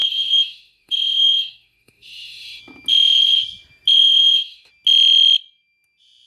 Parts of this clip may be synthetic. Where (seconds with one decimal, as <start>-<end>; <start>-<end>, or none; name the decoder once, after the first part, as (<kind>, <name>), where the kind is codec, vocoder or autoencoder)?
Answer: 0.0-2.6 (autoencoder, DAC-VAE); 4.0-4.7